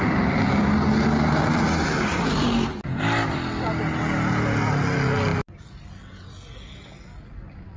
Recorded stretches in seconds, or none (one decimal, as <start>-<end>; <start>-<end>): 0.0-7.8

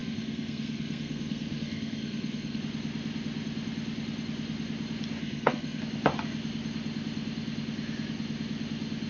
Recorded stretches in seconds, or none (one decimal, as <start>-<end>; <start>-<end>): 2.6-5.2; 5.8-9.1

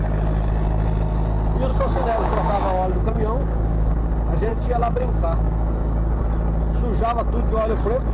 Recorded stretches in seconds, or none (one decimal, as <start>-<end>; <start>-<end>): 0.0-1.7; 3.9-4.5; 6.2-8.1